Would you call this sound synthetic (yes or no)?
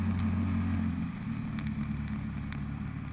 no